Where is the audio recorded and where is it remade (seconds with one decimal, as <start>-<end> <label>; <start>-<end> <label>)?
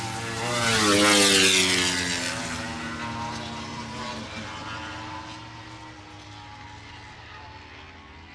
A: 0.0-3.7 recorded; 3.7-4.6 remade; 4.6-8.3 recorded